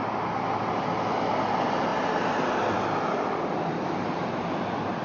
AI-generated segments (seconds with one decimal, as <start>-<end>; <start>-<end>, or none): none

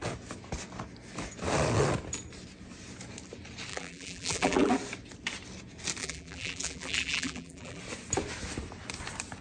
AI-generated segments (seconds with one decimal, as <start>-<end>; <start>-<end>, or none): 3.7-4.7; 6.0-7.8

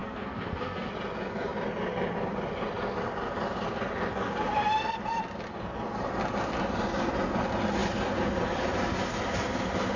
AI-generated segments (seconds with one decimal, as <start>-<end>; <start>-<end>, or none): 0.0-0.9